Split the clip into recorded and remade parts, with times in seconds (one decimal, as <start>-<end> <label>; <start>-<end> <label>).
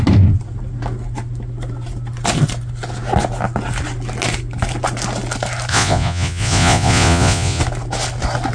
0.0-5.7 recorded; 5.7-7.6 remade; 7.6-8.5 recorded